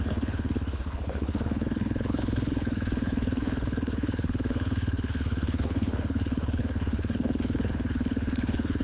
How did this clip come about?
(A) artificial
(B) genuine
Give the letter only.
A